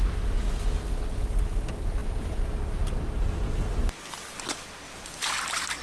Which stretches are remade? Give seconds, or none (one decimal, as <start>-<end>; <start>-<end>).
none